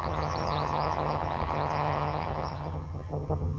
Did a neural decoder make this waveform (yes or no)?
yes